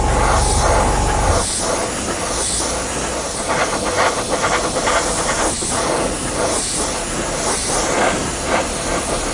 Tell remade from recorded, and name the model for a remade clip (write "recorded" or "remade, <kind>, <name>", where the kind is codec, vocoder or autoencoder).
recorded